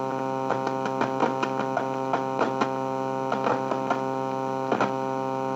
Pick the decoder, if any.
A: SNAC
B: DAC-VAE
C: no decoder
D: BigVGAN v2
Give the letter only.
C